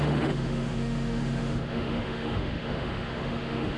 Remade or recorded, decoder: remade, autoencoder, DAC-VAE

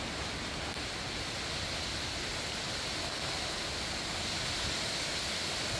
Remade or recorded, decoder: recorded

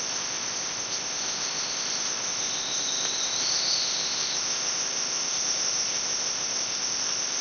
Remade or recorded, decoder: remade, codec, ZipCodec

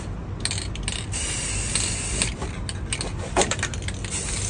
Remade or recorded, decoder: recorded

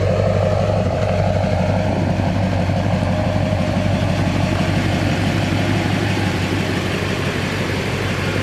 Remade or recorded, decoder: remade, vocoder, BigVGAN v2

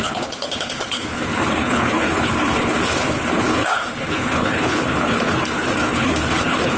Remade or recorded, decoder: remade, codec, HILCodec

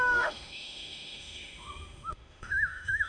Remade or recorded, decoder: remade, autoencoder, DAC-VAE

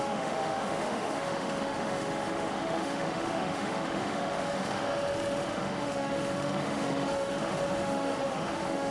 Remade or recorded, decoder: remade, autoencoder, DAC-VAE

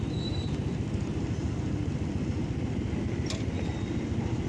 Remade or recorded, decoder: recorded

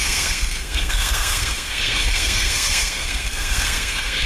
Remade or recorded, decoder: remade, codec, SNAC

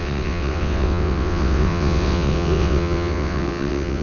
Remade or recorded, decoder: remade, vocoder, WaveNeXt